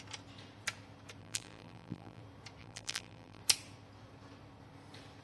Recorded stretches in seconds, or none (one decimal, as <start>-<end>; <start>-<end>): 0.0-1.2; 2.2-2.6; 3.4-5.2